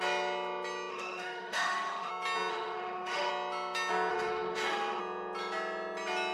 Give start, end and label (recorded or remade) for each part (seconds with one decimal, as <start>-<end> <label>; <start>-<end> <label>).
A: 0.0-0.9 recorded; 0.9-2.1 remade; 2.1-2.5 recorded; 2.5-3.3 remade; 3.3-4.1 recorded; 4.1-5.0 remade; 5.0-6.3 recorded